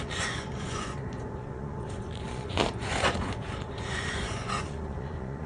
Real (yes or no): no